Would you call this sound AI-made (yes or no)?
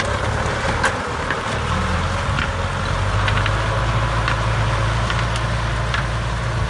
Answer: no